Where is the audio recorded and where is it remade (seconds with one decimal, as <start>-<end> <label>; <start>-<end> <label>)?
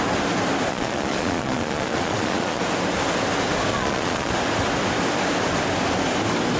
0.0-0.7 recorded; 0.7-2.6 remade; 2.6-3.7 recorded; 3.7-4.3 remade; 4.3-6.6 recorded